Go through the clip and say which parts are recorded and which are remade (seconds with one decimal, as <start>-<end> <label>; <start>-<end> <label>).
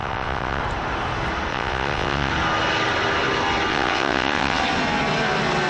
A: 0.0-0.6 remade; 0.6-1.5 recorded; 1.5-2.3 remade; 2.3-3.7 recorded; 3.7-4.6 remade; 4.6-5.7 recorded